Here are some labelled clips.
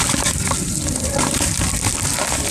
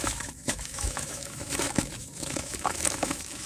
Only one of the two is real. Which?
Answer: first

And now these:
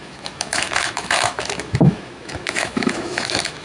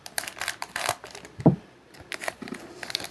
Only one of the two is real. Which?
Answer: second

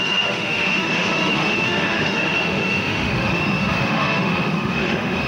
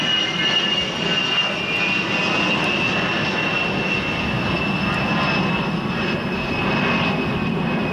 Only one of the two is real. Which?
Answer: second